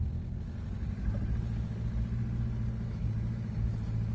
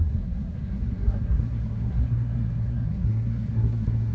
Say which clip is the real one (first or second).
first